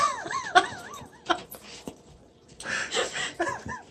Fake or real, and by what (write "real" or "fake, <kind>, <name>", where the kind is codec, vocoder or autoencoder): fake, vocoder, Vocos